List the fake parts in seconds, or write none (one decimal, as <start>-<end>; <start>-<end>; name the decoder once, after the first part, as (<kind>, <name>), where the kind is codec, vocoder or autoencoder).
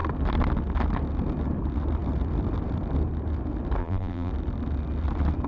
3.8-4.3 (vocoder, BigVGAN v2)